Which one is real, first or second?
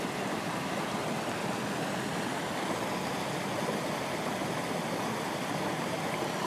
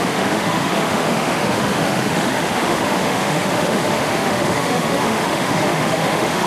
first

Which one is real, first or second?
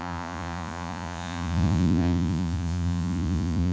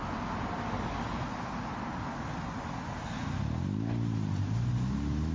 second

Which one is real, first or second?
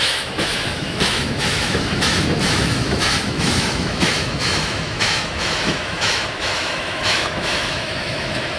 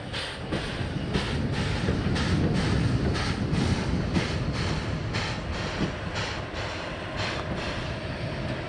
second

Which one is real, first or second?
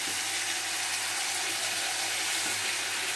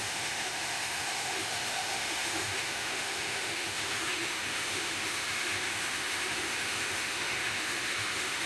first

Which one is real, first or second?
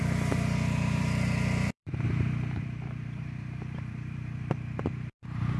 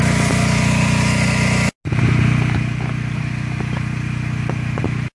second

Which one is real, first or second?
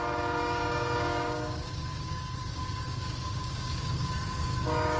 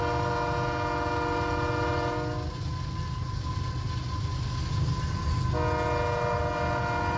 second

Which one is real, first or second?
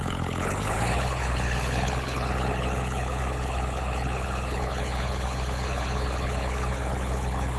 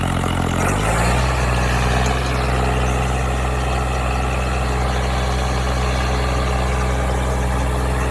second